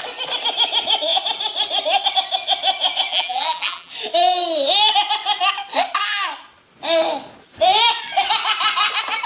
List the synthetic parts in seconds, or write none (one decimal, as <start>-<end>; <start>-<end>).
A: 3.1-3.9